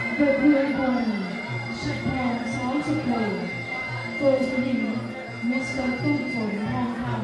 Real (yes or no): yes